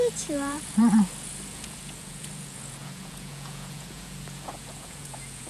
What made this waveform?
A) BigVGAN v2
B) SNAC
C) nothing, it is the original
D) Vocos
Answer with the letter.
D